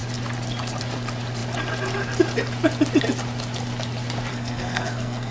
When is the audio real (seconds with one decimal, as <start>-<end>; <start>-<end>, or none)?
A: 0.0-4.3

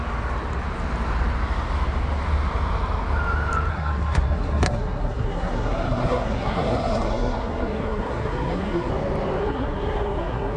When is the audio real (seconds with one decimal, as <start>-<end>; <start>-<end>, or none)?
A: 0.0-3.7; 8.9-9.4

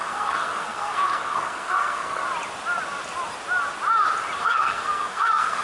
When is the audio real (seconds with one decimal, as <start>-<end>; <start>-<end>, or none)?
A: 2.2-4.4